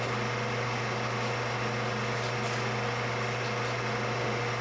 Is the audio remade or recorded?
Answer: recorded